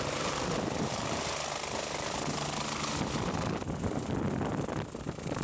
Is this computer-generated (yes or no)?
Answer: no